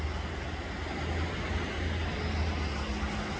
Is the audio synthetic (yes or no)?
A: no